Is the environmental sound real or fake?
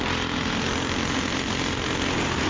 real